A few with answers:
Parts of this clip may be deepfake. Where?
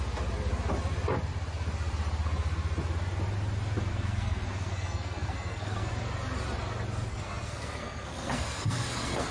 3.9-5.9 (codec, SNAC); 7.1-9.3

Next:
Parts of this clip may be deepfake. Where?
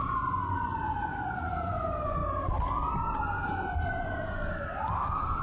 0.0-2.2 (vocoder, Vocos); 3.5-4.4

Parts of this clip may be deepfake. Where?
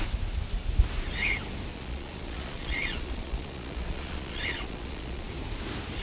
1.7-5.3 (vocoder, Vocos)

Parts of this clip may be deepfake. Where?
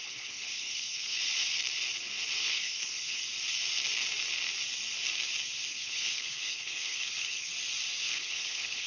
0.0-1.2 (codec, HILCodec); 2.4-3.2; 5.7-7.5; 8.0-8.9